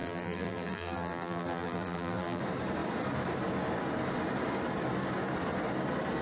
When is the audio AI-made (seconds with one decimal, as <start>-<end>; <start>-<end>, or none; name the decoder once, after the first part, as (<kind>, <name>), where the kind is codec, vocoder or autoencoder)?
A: 0.0-2.4 (vocoder, BigVGAN v2)